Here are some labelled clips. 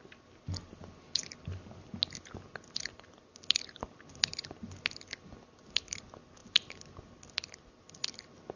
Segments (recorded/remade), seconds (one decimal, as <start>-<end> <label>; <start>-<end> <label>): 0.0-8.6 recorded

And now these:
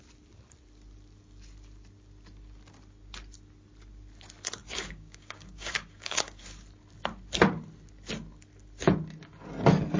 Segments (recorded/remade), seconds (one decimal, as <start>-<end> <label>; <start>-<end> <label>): 0.0-4.6 recorded; 4.6-6.4 remade; 6.4-10.0 recorded

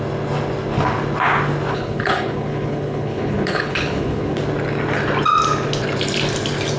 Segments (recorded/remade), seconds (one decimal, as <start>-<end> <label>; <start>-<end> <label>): 0.0-1.7 recorded; 1.7-4.4 remade; 4.4-6.8 recorded

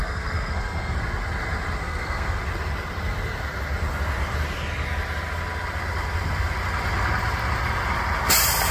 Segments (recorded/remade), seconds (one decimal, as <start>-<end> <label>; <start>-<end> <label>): 0.0-1.0 remade; 1.0-1.8 recorded; 1.8-2.4 remade; 2.4-8.7 recorded

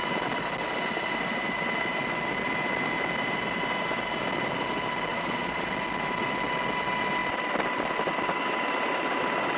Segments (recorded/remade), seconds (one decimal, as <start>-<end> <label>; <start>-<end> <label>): 0.0-5.1 recorded; 5.1-5.7 remade; 5.7-9.6 recorded

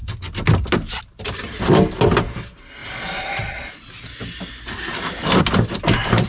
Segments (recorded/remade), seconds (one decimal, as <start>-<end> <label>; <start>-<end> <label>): 0.0-6.3 recorded

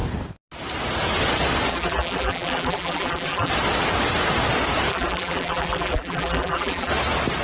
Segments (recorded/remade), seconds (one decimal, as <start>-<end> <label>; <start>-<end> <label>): 0.0-1.7 recorded; 1.7-3.5 remade; 3.5-4.9 recorded; 4.9-6.9 remade; 6.9-7.4 recorded